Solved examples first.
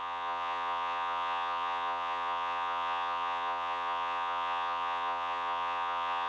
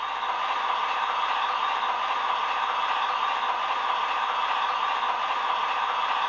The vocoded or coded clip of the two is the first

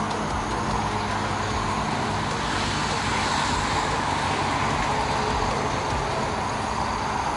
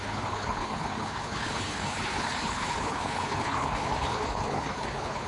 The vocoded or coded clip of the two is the second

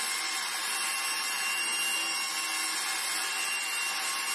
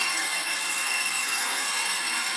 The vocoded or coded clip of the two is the second